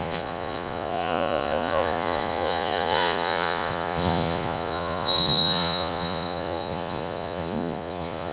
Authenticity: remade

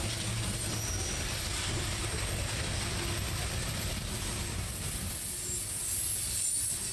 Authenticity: recorded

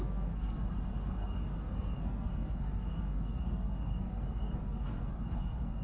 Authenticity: remade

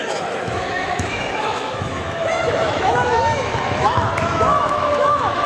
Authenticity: remade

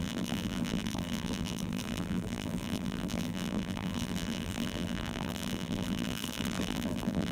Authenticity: remade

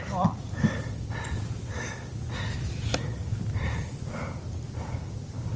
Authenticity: recorded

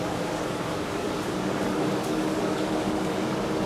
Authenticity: remade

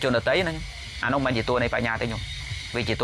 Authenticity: recorded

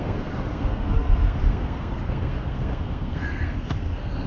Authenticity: remade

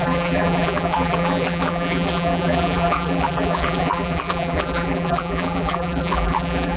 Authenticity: remade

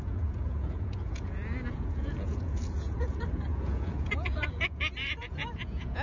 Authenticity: remade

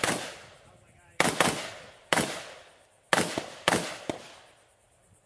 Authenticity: remade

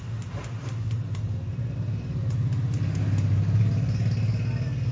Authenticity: recorded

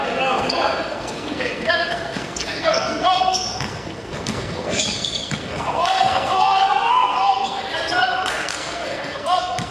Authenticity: remade